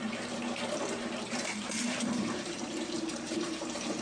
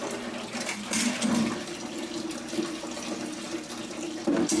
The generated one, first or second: first